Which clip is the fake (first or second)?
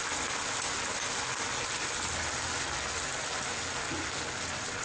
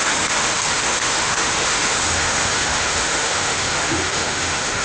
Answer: second